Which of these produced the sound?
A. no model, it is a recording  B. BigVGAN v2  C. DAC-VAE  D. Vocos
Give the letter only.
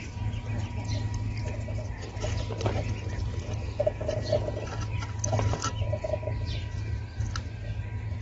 A